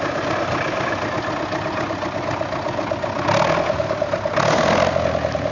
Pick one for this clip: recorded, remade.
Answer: recorded